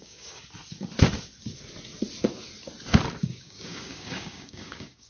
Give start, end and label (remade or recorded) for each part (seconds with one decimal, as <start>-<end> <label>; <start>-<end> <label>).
0.0-0.4 remade; 0.4-3.2 recorded; 3.2-5.1 remade